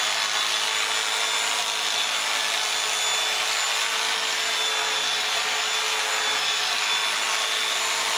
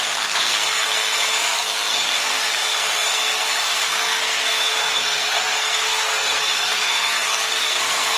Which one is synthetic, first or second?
second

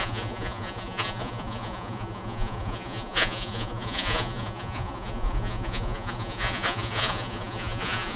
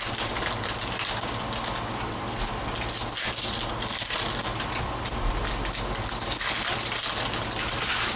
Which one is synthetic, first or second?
first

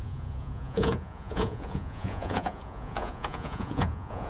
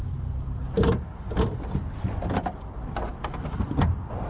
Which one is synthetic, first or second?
first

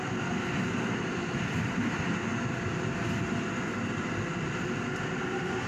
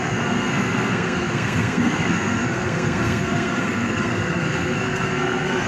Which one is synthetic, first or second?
second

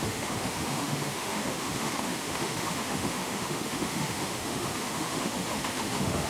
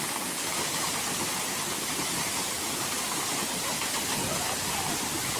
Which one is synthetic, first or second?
first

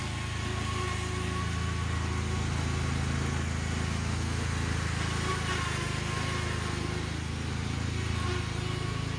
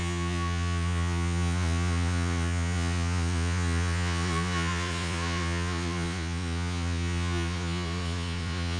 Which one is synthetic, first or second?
second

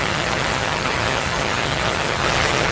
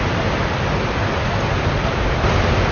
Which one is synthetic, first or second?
first